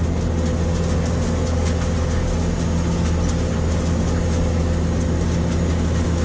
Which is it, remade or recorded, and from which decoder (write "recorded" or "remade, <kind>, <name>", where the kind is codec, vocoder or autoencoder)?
recorded